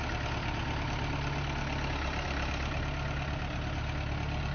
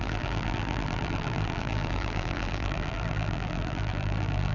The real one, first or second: first